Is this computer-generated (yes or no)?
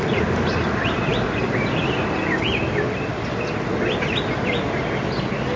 no